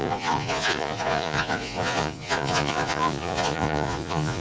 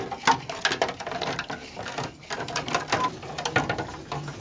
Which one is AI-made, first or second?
first